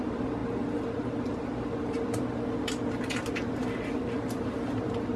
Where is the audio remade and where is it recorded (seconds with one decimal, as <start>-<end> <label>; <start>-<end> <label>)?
0.0-5.2 recorded